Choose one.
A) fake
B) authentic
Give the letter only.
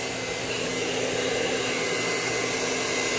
B